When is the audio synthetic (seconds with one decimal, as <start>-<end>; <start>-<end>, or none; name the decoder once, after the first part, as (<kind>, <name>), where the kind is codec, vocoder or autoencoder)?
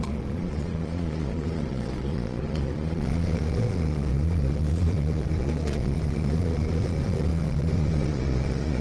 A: 0.0-8.8 (vocoder, Vocos)